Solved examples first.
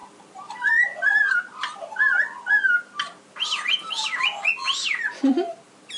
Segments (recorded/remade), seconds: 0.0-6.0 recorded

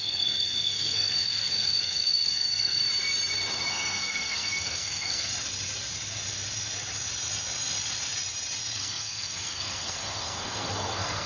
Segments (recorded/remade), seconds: 0.0-2.8 remade; 2.8-3.7 recorded; 3.7-5.3 remade; 5.3-8.8 recorded; 8.8-11.3 remade

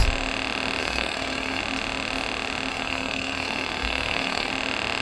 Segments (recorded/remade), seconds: 0.0-0.8 recorded; 0.8-1.6 remade; 1.6-2.7 recorded; 2.7-4.5 remade; 4.5-5.0 recorded